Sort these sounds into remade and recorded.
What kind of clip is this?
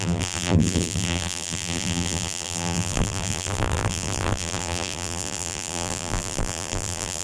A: remade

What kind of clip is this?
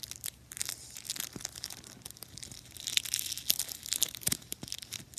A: recorded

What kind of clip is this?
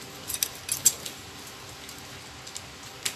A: recorded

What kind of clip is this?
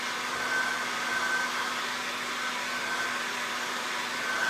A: recorded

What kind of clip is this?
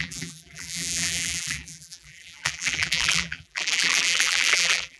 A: remade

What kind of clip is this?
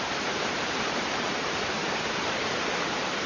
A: remade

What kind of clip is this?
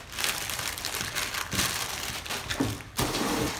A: remade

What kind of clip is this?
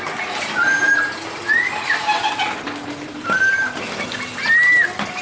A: recorded